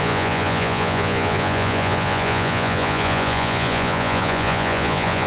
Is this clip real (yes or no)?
no